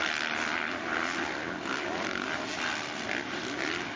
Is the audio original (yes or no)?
yes